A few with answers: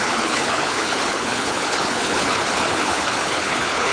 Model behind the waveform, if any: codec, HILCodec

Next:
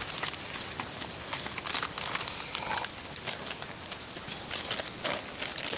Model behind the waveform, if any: none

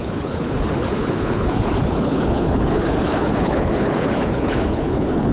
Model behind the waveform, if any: codec, HILCodec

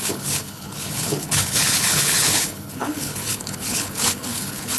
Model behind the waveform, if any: codec, HILCodec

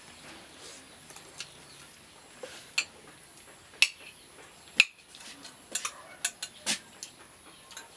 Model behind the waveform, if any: none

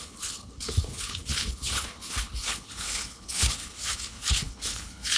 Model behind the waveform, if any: codec, HILCodec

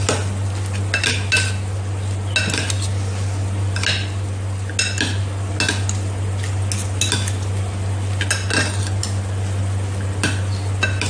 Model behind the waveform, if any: none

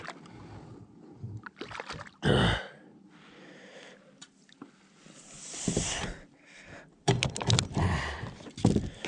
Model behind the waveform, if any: none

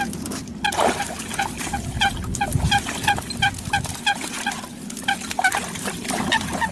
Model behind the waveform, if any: none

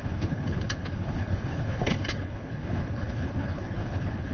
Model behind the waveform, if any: codec, HILCodec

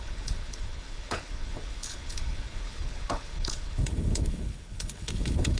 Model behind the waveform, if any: codec, HILCodec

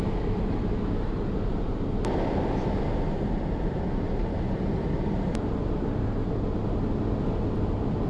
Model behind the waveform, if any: none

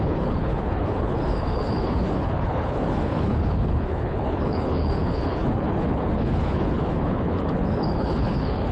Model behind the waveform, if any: codec, HILCodec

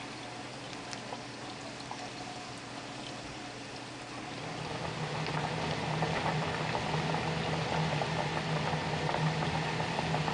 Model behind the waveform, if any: none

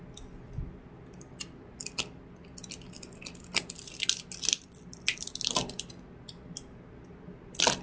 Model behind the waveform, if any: none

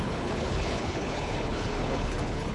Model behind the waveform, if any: codec, HILCodec